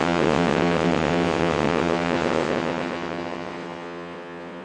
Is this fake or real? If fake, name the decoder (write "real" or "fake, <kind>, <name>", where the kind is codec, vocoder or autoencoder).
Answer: fake, vocoder, WaveNeXt